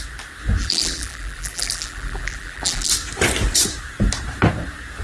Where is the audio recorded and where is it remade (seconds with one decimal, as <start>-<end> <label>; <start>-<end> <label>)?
0.0-0.6 recorded; 0.6-2.9 remade; 2.9-5.0 recorded